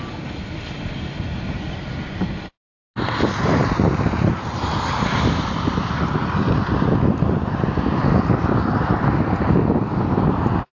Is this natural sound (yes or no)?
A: yes